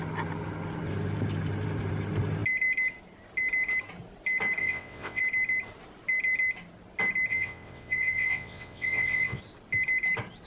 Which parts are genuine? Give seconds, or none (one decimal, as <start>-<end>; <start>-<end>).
0.0-4.6; 5.2-7.3; 9.4-10.5